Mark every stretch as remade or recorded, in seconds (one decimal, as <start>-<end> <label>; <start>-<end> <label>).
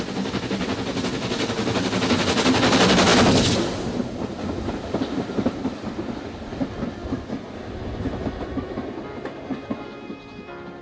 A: 0.0-10.8 recorded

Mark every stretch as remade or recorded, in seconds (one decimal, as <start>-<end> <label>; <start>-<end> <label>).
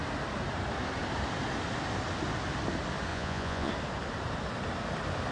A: 0.0-3.1 recorded; 3.1-3.7 remade; 3.7-5.3 recorded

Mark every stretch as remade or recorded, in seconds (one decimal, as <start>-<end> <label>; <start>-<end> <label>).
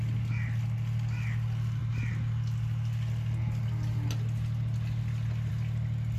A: 0.0-6.2 recorded